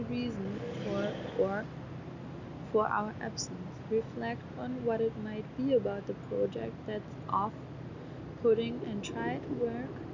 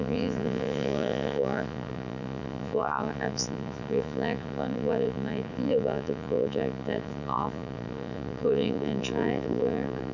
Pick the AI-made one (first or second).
second